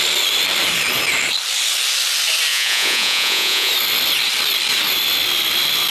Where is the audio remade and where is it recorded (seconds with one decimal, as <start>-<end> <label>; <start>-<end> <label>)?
0.0-2.5 recorded; 2.5-3.7 remade; 3.7-5.9 recorded